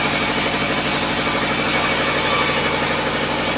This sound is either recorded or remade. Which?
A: recorded